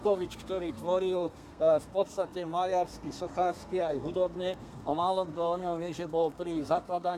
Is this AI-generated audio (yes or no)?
yes